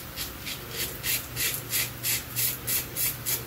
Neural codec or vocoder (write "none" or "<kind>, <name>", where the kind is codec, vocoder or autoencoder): none